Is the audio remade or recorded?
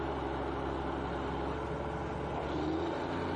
recorded